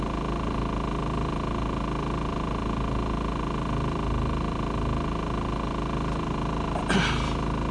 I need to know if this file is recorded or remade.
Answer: recorded